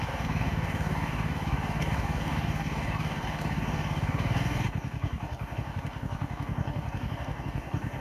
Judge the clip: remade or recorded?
remade